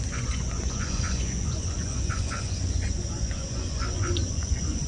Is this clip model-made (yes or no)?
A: yes